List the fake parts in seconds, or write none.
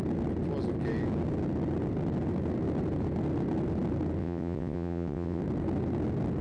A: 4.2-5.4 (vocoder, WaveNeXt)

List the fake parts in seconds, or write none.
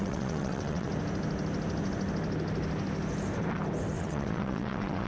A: 0.0-0.9 (vocoder, WaveNeXt); 4.0-5.1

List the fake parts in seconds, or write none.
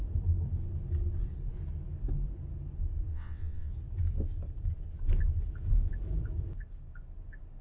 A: 3.1-3.7 (vocoder, WaveNeXt)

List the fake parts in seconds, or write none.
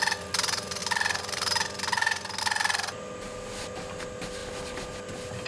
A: none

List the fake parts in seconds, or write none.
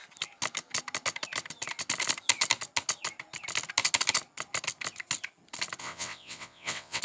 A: 5.8-7.0 (vocoder, WaveNeXt)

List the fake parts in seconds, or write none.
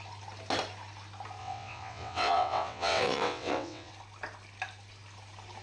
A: 1.4-3.9 (vocoder, WaveNeXt)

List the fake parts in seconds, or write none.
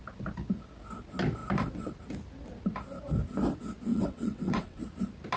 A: 3.9-4.8 (vocoder, WaveNeXt)